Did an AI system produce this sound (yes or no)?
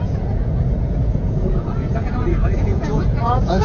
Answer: yes